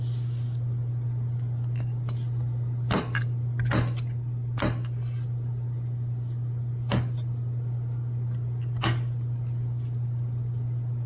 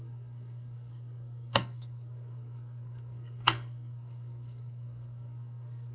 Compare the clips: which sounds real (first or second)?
first